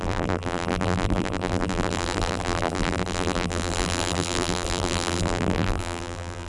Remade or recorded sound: remade